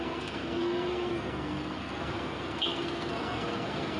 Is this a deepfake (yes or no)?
yes